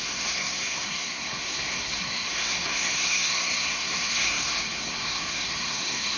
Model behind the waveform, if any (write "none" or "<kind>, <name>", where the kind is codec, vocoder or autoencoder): codec, SNAC